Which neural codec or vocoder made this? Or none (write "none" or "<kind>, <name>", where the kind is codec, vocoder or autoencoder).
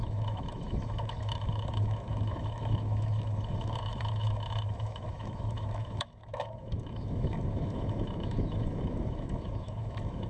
autoencoder, DAC-VAE